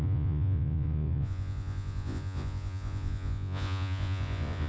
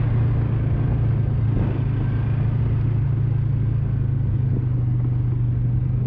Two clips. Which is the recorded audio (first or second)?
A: second